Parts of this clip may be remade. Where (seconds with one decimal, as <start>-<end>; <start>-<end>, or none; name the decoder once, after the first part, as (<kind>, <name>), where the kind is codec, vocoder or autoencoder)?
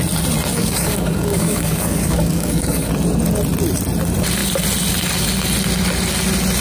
0.5-2.9 (codec, DAC)